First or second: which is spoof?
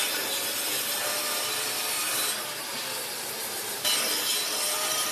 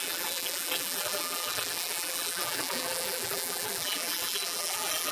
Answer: second